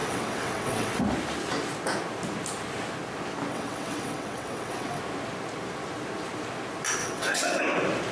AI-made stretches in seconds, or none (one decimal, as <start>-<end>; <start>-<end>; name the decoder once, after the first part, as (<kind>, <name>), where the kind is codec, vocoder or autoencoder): 0.0-1.0 (vocoder, WaveNeXt); 3.5-5.0; 7.0-7.6